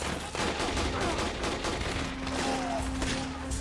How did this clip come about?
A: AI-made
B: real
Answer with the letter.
B